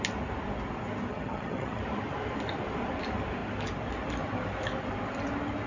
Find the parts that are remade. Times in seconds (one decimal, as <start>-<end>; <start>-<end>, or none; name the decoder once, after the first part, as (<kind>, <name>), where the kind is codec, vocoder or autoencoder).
1.1-1.8 (vocoder, HiFi-GAN)